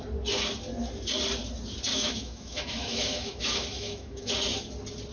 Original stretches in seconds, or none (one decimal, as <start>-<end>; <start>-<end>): 0.0-1.9; 4.3-5.1

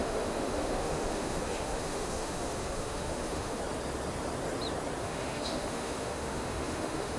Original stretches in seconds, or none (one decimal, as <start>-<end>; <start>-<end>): 3.6-5.0